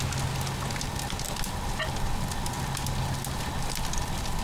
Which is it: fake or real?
real